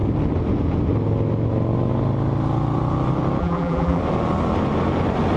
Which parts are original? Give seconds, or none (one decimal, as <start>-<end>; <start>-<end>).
0.0-3.4; 4.0-5.4